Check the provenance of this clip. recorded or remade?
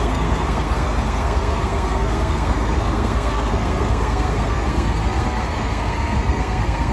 remade